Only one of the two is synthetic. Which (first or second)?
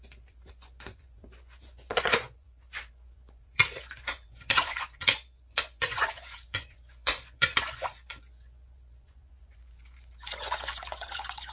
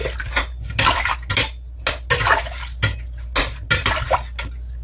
first